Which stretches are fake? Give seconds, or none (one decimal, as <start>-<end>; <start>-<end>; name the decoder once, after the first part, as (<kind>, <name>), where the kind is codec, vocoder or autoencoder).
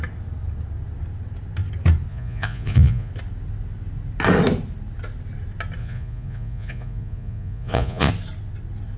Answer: 2.1-3.1 (vocoder, Vocos); 5.8-8.1